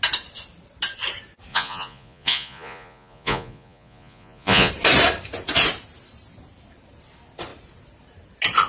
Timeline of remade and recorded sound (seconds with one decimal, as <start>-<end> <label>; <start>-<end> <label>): 0.0-1.5 recorded; 1.5-4.7 remade; 4.7-8.7 recorded